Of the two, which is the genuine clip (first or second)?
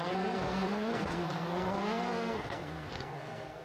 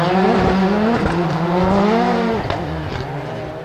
second